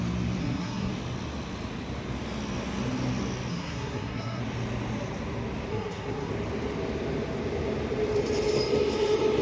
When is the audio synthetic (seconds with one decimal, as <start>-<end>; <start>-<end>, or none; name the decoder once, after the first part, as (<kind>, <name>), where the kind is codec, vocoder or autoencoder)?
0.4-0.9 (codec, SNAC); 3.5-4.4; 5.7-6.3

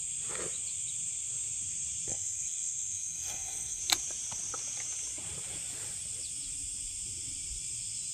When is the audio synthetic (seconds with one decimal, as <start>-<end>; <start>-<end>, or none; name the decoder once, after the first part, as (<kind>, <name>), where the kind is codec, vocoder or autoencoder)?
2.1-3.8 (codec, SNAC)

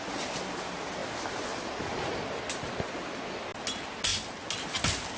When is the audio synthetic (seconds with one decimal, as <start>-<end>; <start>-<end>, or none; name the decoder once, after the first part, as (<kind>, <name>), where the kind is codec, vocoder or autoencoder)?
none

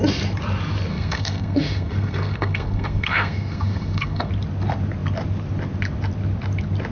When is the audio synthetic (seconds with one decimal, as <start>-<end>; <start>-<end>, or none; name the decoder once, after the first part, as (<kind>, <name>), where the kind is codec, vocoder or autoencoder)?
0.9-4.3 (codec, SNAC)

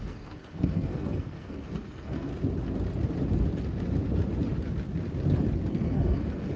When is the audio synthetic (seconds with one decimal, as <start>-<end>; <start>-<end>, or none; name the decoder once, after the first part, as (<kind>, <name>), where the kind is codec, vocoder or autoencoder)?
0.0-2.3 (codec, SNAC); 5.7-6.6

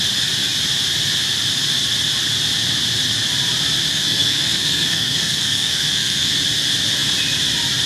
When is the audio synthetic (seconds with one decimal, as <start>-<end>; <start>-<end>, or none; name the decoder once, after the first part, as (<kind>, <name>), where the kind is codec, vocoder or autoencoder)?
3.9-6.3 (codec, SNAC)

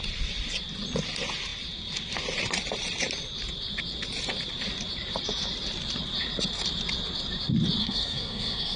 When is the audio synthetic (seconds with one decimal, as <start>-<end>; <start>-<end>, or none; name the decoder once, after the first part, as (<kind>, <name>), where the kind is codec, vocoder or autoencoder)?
7.8-8.8 (codec, SNAC)

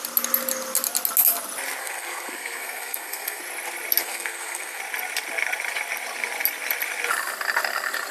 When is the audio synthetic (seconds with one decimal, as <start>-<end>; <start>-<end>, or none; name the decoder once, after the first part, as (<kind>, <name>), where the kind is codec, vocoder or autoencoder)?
1.8-3.4 (codec, SNAC); 4.0-4.8